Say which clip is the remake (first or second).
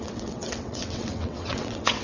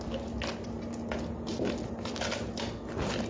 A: first